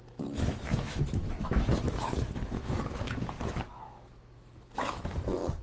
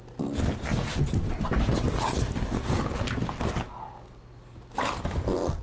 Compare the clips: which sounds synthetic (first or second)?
first